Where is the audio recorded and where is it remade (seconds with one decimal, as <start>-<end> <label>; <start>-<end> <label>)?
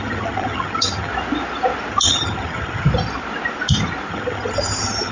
0.0-1.1 remade; 1.1-1.9 recorded; 1.9-2.9 remade; 2.9-4.1 recorded; 4.1-5.1 remade